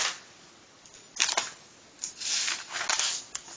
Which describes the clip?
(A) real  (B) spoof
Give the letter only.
A